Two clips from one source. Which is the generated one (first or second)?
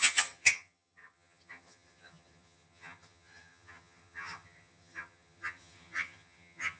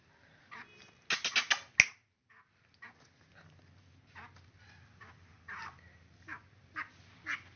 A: first